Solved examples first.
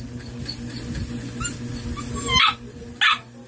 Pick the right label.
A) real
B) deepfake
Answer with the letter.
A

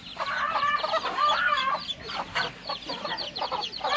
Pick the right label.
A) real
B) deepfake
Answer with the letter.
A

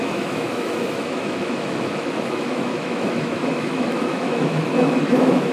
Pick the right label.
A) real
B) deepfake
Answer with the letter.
B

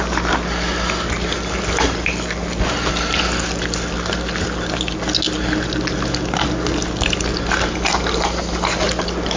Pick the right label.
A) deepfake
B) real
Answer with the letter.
B